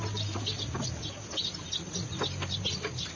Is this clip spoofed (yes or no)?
no